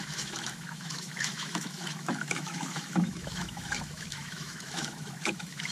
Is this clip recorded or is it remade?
remade